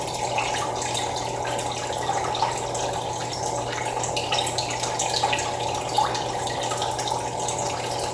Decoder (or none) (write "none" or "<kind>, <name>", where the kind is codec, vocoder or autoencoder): none